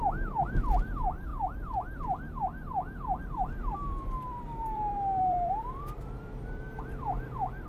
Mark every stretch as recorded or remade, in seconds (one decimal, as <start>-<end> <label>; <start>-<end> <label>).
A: 0.0-1.3 remade; 1.3-3.2 recorded; 3.2-7.7 remade